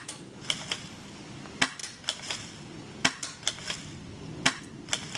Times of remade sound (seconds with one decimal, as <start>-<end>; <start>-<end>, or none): none